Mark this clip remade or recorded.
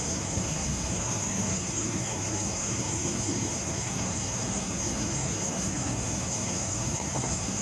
remade